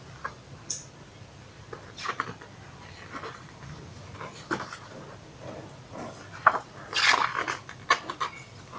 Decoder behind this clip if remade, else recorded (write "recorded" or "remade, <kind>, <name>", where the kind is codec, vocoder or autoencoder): recorded